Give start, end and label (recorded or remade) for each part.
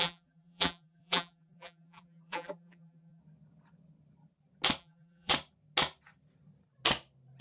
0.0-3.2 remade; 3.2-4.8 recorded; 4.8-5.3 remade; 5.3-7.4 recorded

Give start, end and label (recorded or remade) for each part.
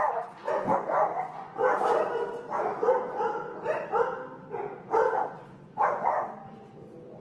0.0-1.6 remade; 1.6-2.6 recorded; 2.6-3.3 remade; 3.3-5.3 recorded; 5.3-7.2 remade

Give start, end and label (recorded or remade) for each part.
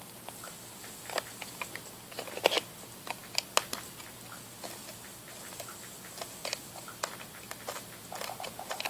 0.0-8.9 recorded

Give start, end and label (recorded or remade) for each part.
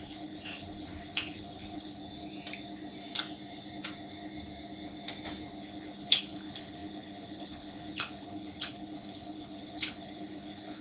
0.0-2.0 remade; 2.0-5.6 recorded; 5.6-10.8 remade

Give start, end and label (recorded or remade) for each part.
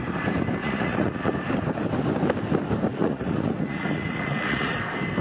0.0-0.6 recorded; 0.6-1.3 remade; 1.3-3.0 recorded; 3.0-4.8 remade; 4.8-5.2 recorded